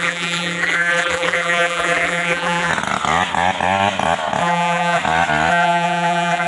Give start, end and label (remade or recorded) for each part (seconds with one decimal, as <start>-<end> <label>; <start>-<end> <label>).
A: 0.0-2.7 remade; 2.7-4.4 recorded; 4.4-5.0 remade; 5.0-5.5 recorded; 5.5-6.5 remade